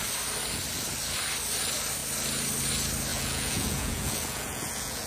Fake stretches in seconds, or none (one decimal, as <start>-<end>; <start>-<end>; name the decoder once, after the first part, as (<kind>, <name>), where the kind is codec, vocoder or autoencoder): 3.1-5.1 (vocoder, Vocos)